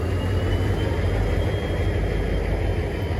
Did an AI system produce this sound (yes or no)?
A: no